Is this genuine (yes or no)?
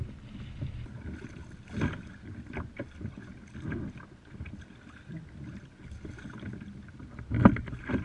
yes